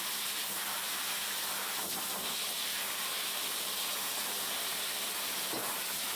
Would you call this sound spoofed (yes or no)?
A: yes